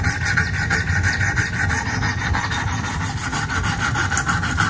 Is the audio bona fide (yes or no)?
yes